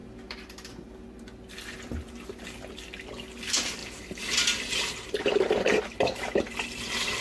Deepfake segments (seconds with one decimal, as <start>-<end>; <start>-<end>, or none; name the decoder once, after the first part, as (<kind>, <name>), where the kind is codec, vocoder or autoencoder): 3.8-5.8 (vocoder, BigVGAN v2)